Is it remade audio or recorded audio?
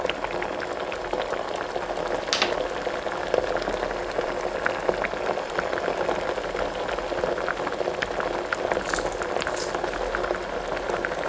recorded